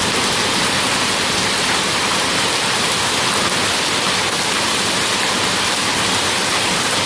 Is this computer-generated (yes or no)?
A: no